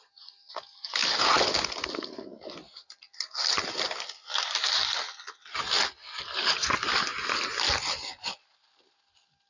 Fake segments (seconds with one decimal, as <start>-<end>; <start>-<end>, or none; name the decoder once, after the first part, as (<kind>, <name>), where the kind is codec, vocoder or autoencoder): none